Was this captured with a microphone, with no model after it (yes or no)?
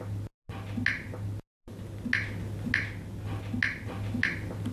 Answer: yes